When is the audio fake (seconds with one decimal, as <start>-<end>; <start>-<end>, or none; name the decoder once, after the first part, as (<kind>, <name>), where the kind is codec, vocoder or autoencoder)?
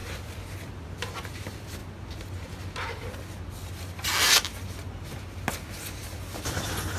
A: 0.9-1.8 (vocoder, BigVGAN v2); 6.0-7.0